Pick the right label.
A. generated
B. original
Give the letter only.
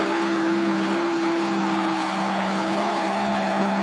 A